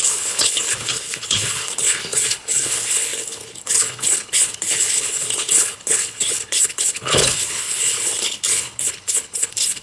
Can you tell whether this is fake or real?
fake